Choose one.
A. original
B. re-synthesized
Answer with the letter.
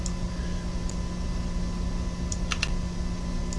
A